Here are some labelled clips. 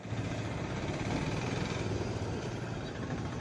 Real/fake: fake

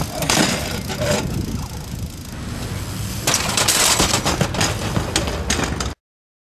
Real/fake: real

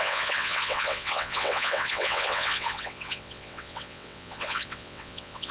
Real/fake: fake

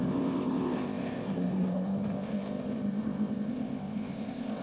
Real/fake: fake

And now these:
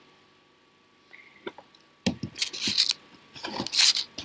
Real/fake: real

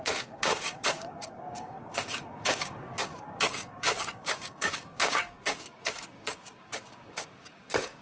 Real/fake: fake